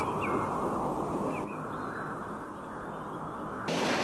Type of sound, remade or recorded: recorded